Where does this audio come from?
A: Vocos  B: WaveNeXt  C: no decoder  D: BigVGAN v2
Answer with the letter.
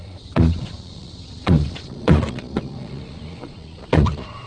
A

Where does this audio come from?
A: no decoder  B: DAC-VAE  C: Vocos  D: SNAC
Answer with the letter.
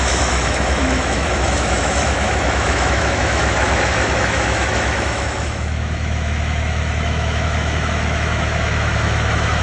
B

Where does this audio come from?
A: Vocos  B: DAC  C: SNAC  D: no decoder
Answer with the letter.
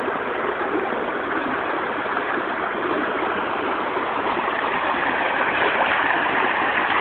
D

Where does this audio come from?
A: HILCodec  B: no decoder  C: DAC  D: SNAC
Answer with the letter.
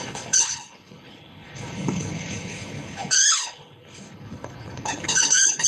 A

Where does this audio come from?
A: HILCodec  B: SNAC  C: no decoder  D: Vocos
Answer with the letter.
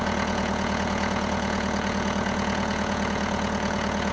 D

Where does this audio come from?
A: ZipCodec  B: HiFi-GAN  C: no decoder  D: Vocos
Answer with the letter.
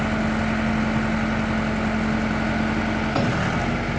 C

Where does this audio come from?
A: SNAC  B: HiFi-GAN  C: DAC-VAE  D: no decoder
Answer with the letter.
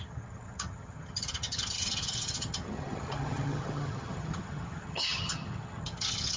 B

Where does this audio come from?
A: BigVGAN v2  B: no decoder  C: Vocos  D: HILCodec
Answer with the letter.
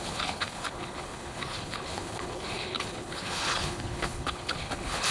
D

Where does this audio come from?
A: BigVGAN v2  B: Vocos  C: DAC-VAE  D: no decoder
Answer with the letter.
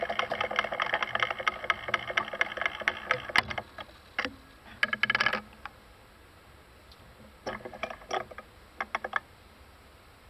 D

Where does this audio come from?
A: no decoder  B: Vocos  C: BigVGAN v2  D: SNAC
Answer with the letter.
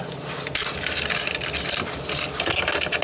A